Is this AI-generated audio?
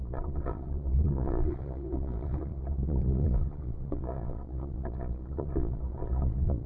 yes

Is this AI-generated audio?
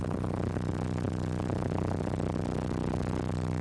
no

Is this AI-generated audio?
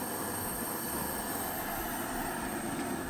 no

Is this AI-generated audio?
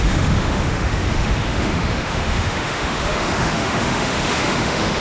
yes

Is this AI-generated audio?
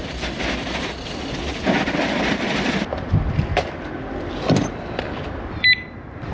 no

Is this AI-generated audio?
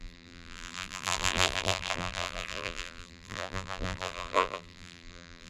yes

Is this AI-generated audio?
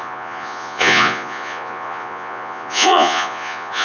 yes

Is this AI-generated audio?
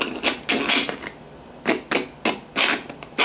no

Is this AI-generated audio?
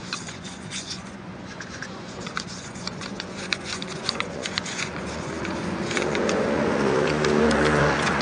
yes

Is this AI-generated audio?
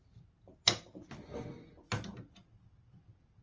no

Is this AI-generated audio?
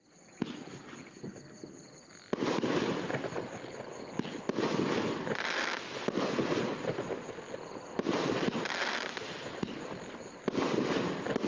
no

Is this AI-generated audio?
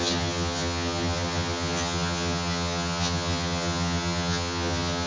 yes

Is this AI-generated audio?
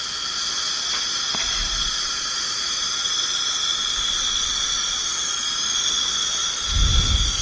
no